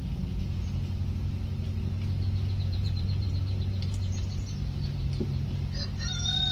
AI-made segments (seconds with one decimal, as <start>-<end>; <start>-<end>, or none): 2.5-6.5